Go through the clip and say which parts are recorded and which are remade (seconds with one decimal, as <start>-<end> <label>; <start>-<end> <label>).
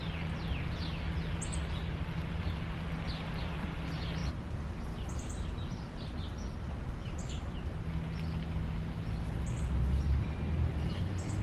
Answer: 0.0-11.4 recorded